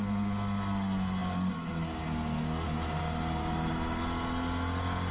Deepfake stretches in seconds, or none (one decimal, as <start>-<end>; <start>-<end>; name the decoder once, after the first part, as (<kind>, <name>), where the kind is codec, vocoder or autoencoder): 3.4-4.0 (autoencoder, DAC-VAE)

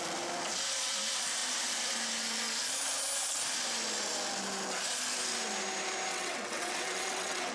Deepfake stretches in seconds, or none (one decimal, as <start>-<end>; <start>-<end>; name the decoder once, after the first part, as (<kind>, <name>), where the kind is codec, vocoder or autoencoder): 6.1-7.5 (vocoder, WaveNeXt)